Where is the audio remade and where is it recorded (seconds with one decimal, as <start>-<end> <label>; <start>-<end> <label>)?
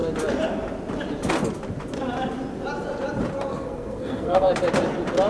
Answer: 0.0-3.5 recorded; 3.5-4.5 remade; 4.5-5.3 recorded